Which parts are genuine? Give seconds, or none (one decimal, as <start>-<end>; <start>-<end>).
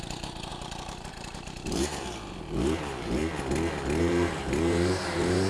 3.2-4.0